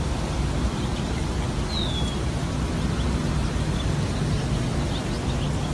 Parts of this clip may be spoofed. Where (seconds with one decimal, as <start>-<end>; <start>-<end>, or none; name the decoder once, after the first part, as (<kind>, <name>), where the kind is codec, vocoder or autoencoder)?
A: none